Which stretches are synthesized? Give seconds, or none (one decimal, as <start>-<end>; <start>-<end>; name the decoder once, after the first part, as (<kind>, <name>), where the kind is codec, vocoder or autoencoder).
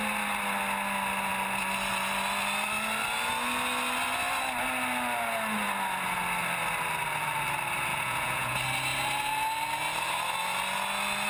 7.9-8.6 (vocoder, Vocos)